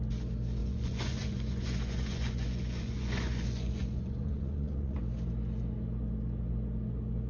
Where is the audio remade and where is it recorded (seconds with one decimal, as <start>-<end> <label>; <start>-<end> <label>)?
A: 0.0-0.6 recorded; 0.6-5.0 remade; 5.0-7.3 recorded